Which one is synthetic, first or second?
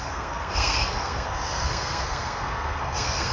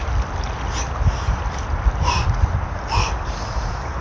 first